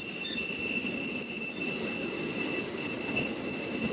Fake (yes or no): no